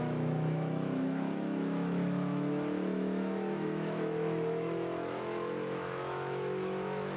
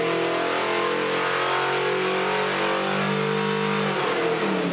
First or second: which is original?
second